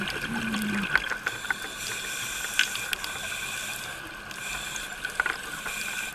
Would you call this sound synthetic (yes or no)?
no